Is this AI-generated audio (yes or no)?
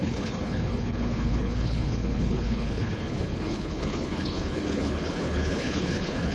yes